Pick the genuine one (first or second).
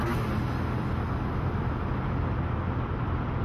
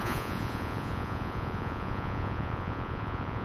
first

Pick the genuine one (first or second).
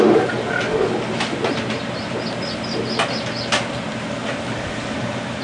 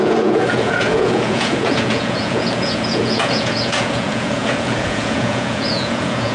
first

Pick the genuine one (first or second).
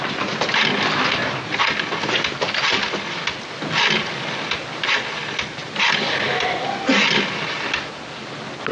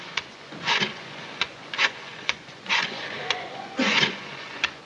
first